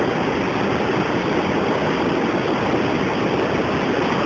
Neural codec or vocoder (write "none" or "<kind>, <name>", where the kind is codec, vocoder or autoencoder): none